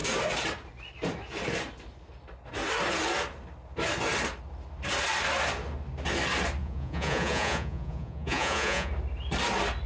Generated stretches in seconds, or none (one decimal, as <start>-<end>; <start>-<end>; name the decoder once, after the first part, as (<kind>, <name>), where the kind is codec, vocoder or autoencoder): 6.6-8.9 (vocoder, Vocos)